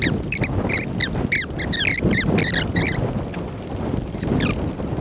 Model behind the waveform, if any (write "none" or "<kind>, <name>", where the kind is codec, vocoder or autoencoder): none